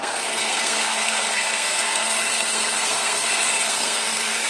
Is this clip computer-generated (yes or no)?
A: yes